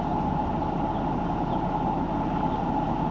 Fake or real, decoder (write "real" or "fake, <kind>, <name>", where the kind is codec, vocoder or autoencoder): real